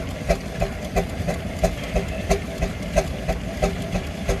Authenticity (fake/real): fake